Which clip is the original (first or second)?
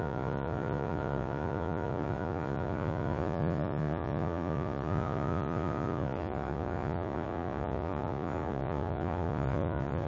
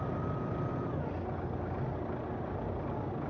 second